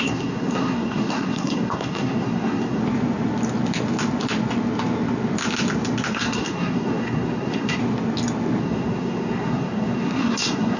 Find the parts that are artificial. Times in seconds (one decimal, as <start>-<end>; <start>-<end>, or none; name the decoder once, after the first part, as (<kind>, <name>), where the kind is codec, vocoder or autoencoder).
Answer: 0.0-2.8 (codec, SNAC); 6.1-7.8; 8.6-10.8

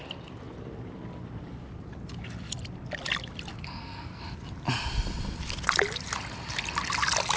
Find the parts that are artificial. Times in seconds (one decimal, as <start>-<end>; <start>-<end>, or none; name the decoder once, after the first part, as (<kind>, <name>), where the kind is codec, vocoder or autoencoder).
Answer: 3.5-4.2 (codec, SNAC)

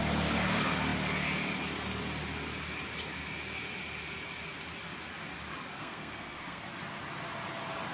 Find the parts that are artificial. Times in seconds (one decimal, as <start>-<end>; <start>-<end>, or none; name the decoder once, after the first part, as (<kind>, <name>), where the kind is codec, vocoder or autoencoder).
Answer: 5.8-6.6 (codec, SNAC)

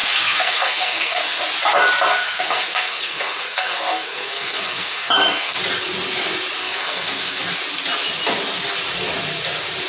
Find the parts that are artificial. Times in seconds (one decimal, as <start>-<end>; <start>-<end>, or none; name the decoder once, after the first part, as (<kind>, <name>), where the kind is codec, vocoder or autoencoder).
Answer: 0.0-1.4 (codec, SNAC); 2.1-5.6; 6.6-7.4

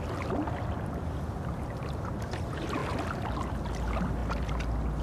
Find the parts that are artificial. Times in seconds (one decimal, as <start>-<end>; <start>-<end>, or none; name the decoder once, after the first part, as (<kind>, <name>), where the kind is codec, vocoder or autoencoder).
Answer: none

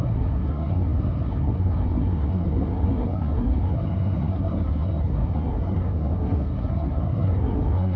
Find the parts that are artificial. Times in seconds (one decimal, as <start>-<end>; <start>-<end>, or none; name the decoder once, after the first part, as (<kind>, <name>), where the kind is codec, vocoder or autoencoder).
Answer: 0.0-8.0 (codec, SNAC)

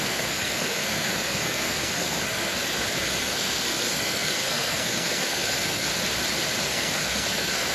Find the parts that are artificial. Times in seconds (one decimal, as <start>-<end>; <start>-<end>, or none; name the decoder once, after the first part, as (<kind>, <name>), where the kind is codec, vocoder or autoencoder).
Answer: 0.0-5.9 (codec, SNAC); 6.6-7.7